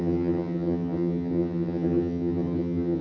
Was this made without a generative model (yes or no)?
no